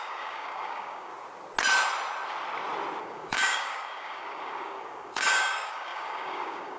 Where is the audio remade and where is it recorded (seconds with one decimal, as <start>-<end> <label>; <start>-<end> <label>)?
0.0-1.1 remade; 1.1-3.0 recorded; 3.0-6.8 remade